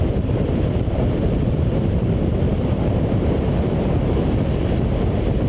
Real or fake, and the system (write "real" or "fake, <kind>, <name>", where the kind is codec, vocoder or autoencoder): fake, vocoder, BigVGAN v2